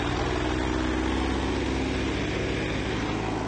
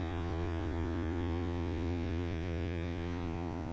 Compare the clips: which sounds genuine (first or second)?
first